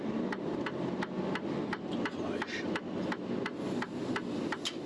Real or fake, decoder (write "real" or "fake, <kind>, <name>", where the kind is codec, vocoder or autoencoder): real